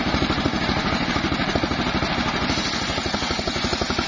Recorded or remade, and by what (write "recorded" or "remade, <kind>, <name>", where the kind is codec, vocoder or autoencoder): recorded